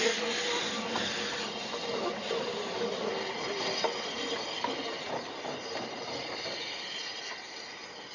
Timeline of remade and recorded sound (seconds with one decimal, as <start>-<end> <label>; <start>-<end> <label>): 0.0-8.1 recorded